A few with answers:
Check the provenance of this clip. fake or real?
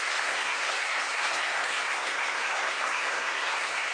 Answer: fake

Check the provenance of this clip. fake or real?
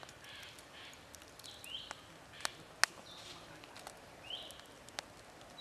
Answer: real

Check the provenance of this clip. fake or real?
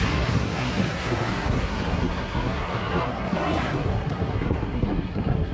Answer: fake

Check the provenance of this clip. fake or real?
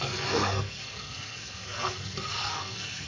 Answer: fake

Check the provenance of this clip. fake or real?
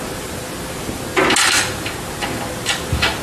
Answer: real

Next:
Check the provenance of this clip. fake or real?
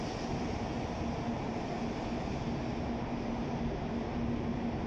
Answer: real